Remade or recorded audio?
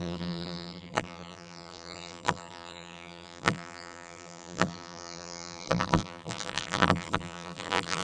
remade